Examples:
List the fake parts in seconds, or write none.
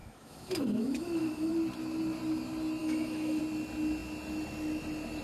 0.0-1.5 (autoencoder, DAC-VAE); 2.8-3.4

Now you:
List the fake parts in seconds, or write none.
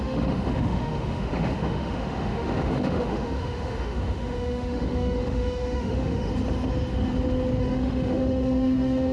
0.0-6.3 (autoencoder, DAC-VAE); 7.6-9.1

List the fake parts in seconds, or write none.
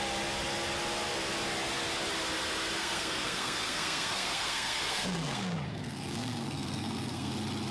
2.8-7.3 (codec, SNAC)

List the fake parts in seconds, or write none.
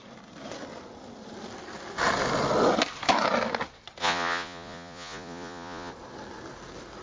4.0-5.9 (vocoder, Vocos)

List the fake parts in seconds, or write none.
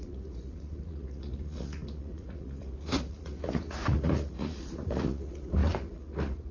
0.0-6.5 (vocoder, Vocos)